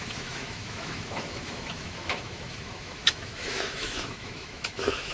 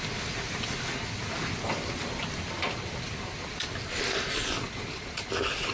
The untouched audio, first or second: second